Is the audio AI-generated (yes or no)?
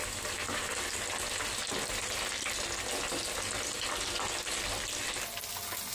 no